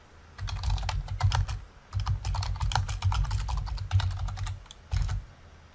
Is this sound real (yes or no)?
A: yes